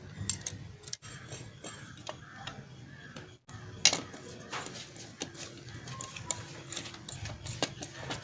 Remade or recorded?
recorded